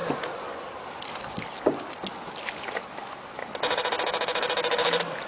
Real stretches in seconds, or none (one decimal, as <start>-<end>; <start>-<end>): 0.0-5.3